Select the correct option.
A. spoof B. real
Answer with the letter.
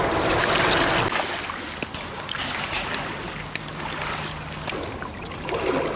B